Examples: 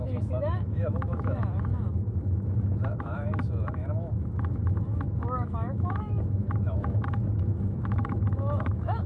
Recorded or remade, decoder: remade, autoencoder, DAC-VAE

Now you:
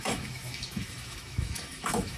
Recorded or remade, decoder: remade, autoencoder, DAC-VAE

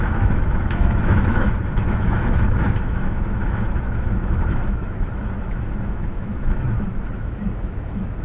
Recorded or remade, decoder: remade, autoencoder, DAC-VAE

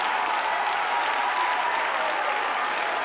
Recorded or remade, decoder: recorded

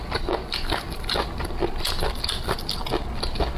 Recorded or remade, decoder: recorded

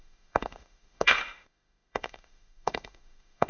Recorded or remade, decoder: remade, autoencoder, DAC-VAE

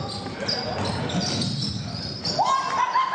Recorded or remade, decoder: recorded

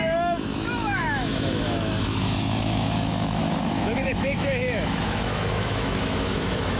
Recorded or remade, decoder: remade, autoencoder, DAC-VAE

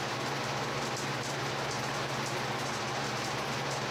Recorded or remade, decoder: recorded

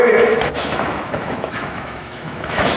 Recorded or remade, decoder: remade, autoencoder, DAC-VAE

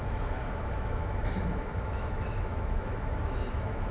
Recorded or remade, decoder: remade, autoencoder, DAC-VAE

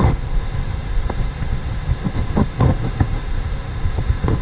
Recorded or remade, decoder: remade, autoencoder, DAC-VAE